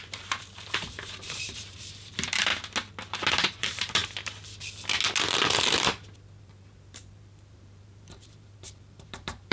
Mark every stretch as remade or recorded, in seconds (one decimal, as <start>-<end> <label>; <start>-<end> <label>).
0.0-2.5 remade; 2.5-3.3 recorded; 3.3-4.0 remade; 4.0-6.4 recorded; 6.4-9.5 remade

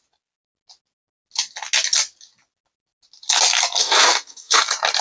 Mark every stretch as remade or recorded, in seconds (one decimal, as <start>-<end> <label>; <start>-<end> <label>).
0.0-3.8 recorded; 3.8-4.6 remade; 4.6-5.0 recorded

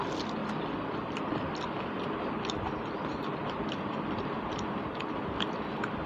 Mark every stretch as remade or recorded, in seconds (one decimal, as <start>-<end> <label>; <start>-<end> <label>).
0.0-6.1 recorded

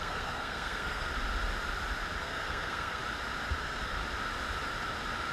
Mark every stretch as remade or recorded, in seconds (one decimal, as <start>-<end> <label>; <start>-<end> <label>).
0.0-1.1 remade; 1.1-2.2 recorded; 2.2-3.0 remade; 3.0-3.6 recorded; 3.6-4.0 remade; 4.0-5.3 recorded

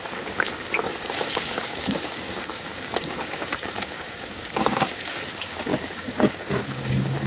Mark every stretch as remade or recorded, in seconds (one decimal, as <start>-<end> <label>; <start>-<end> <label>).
0.0-7.3 remade

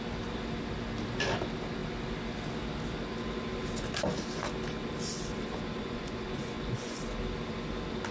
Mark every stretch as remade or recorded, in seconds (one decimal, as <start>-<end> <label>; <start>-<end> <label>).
0.0-5.8 recorded; 5.8-7.0 remade; 7.0-8.1 recorded